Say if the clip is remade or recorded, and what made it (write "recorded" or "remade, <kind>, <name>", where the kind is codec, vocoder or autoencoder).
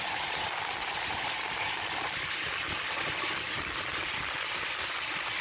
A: recorded